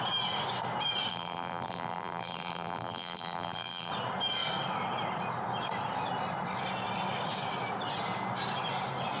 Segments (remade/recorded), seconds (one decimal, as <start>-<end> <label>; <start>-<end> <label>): 0.0-1.1 recorded; 1.1-3.9 remade; 3.9-9.2 recorded

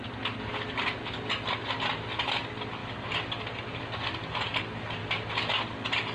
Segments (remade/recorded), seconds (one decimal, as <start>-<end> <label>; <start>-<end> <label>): 0.0-2.8 recorded; 2.8-4.6 remade; 4.6-6.1 recorded

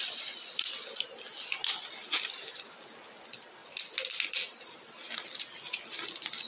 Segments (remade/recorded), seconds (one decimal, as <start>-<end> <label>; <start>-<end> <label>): 0.0-6.5 recorded

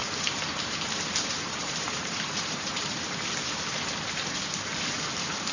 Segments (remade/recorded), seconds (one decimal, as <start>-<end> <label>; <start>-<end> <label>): 0.0-3.3 remade; 3.3-5.5 recorded

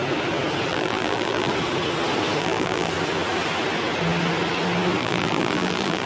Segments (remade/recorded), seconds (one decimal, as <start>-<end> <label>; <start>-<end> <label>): 0.0-0.7 recorded; 0.7-1.5 remade; 1.5-2.4 recorded; 2.4-2.9 remade; 2.9-5.0 recorded; 5.0-6.1 remade

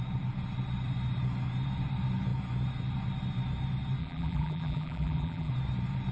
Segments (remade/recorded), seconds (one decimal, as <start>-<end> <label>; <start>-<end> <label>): 0.0-4.0 recorded; 4.0-5.5 remade; 5.5-6.1 recorded

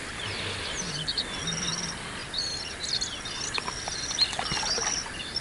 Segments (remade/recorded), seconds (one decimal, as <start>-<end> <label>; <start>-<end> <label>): 0.0-2.2 recorded; 2.2-4.2 remade; 4.2-5.4 recorded

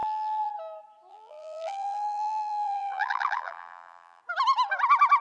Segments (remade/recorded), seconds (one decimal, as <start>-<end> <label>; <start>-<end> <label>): 0.0-0.5 remade; 0.5-1.1 recorded; 1.1-4.2 remade; 4.2-5.2 recorded